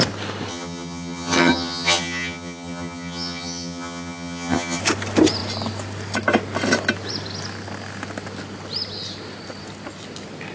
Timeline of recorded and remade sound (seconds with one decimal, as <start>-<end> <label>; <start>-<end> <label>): 0.0-0.5 recorded; 0.5-4.8 remade; 4.8-10.5 recorded